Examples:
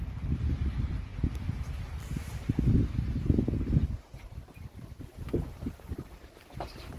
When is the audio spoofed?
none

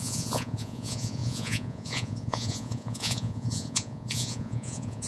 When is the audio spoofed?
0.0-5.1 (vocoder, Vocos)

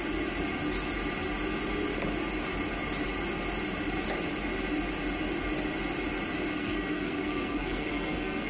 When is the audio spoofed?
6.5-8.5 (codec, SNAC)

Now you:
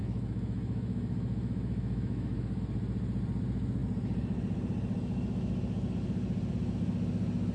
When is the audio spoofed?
0.0-2.6 (autoencoder, DAC-VAE)

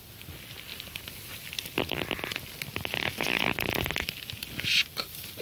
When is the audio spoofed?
none

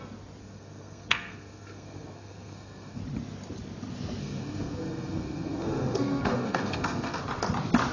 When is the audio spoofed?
0.4-3.0 (codec, SNAC); 4.2-7.2

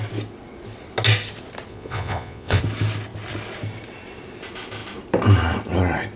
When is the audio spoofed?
1.7-2.6 (vocoder, Vocos)